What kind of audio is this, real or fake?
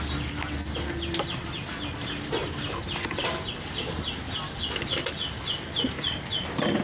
real